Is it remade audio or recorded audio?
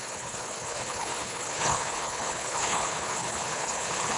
remade